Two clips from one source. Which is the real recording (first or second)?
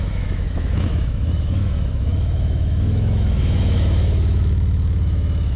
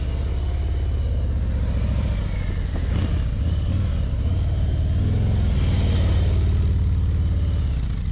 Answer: second